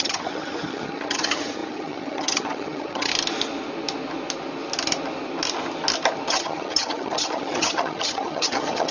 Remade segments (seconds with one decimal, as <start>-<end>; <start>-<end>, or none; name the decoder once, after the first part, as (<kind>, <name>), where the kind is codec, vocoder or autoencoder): 0.0-3.1 (vocoder, HiFi-GAN); 6.3-8.9